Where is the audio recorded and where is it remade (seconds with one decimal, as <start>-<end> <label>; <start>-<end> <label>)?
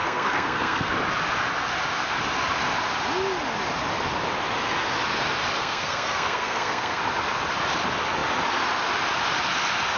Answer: 0.0-0.9 remade; 0.9-5.6 recorded; 5.6-7.0 remade; 7.0-10.0 recorded